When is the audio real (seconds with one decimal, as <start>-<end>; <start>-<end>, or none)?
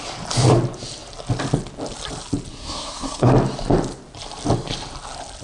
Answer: 0.0-2.5; 3.3-5.4